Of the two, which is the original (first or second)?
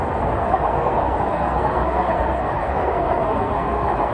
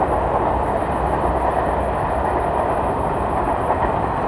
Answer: second